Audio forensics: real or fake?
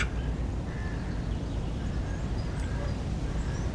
real